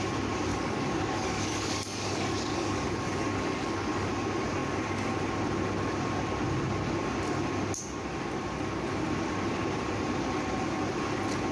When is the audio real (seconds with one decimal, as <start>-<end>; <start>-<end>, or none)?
0.0-0.5; 4.1-11.5